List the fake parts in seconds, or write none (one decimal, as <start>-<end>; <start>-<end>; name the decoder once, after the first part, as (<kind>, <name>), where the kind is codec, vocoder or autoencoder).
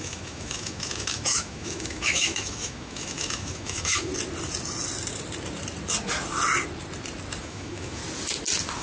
0.0-4.1 (autoencoder, DAC-VAE); 7.4-8.0